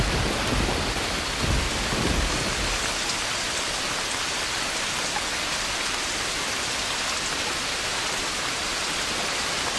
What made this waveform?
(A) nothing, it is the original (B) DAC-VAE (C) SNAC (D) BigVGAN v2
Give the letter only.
A